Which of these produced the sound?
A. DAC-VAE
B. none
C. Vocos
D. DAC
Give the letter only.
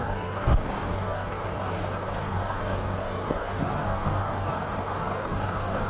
D